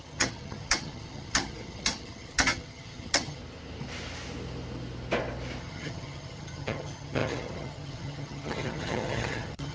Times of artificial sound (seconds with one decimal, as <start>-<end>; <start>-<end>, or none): 0.0-3.4; 5.6-9.7